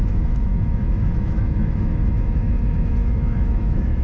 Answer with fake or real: fake